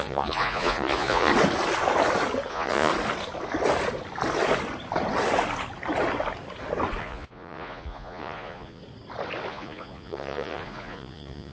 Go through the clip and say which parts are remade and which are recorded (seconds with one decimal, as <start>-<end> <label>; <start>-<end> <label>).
0.0-1.3 remade; 1.3-2.5 recorded; 2.5-2.9 remade; 2.9-7.0 recorded; 7.0-8.8 remade; 8.8-9.5 recorded; 9.5-11.5 remade